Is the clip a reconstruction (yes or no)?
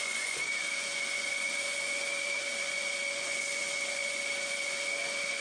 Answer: yes